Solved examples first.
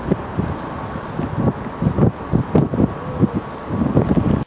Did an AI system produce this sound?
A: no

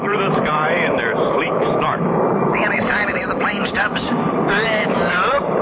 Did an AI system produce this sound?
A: yes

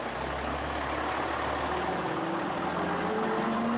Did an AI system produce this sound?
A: no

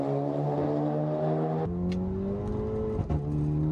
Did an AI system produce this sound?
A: no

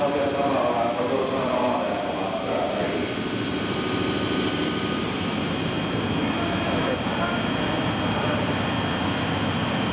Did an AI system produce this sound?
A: yes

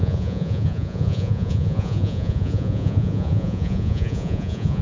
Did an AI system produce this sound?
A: yes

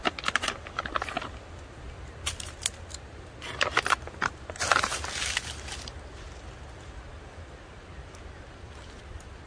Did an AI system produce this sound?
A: no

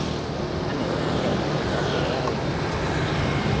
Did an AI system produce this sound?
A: no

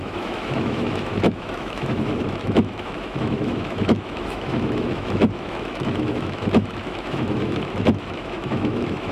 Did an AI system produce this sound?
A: yes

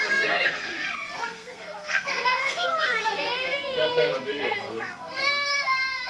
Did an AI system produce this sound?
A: yes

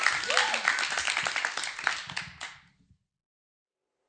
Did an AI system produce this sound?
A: no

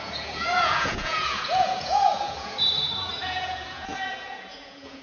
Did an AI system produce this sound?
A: yes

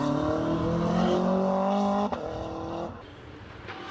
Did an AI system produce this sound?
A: no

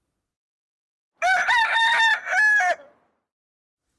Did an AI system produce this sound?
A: no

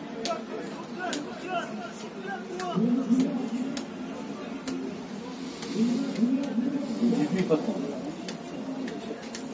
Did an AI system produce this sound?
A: no